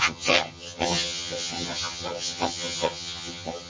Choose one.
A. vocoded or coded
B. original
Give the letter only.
A